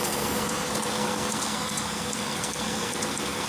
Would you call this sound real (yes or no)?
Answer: no